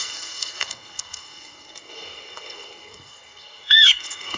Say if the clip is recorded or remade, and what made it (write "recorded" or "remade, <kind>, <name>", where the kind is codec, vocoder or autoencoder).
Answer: remade, codec, SNAC